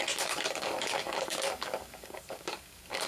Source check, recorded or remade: remade